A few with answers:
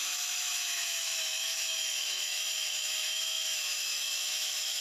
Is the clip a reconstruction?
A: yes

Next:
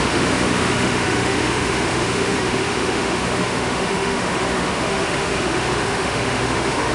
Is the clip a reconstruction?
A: yes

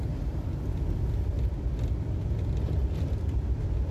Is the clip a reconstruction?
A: no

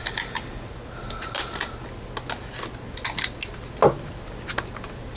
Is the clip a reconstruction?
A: no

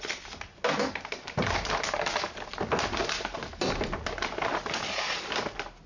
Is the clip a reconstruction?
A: no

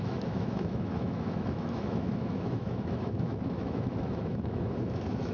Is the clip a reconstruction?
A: yes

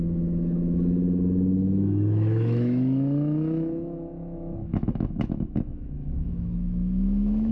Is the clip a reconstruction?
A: yes